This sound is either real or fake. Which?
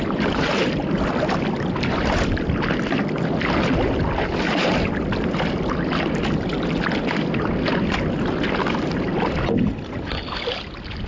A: real